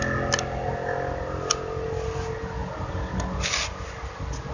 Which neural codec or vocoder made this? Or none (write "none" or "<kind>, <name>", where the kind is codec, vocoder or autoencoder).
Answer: none